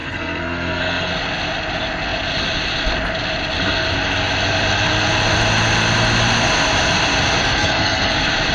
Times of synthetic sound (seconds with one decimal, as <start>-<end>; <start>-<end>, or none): 0.0-1.1; 7.4-8.1